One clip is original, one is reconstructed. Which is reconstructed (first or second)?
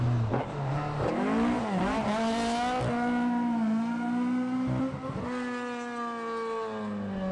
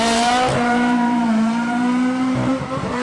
second